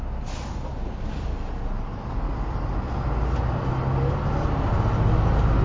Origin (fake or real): real